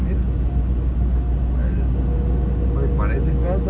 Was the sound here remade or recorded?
recorded